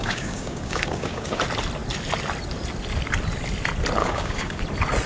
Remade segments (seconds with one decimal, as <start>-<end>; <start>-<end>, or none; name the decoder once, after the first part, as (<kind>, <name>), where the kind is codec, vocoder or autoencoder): 0.0-1.4 (codec, DAC); 4.0-4.6